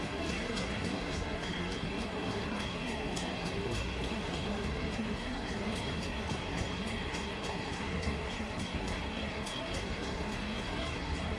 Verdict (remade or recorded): remade